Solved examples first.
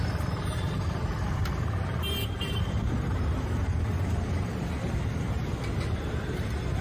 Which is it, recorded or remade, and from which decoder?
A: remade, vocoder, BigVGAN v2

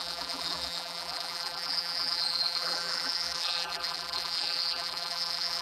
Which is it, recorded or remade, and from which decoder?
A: remade, vocoder, BigVGAN v2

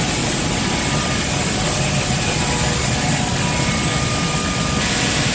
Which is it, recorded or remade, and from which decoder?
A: recorded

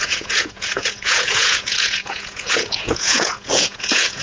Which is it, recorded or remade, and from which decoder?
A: remade, vocoder, Vocos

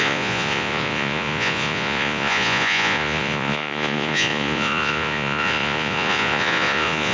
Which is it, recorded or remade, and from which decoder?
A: remade, vocoder, Vocos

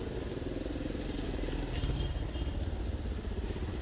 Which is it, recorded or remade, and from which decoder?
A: recorded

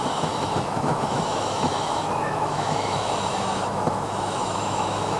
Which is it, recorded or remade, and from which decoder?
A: remade, autoencoder, DAC-VAE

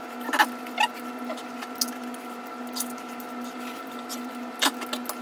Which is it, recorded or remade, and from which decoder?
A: recorded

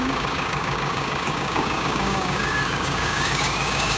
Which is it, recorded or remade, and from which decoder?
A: remade, codec, DAC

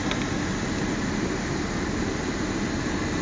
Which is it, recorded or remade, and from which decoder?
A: recorded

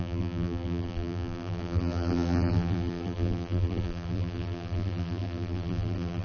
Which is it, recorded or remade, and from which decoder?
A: remade, vocoder, BigVGAN v2